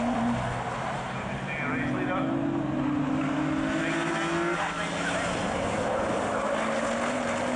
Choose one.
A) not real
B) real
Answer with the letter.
B